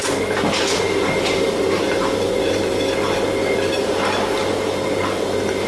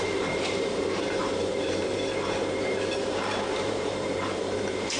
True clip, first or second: first